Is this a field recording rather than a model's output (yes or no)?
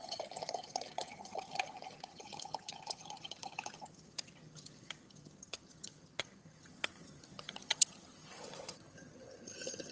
no